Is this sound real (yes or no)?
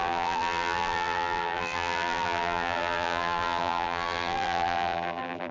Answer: no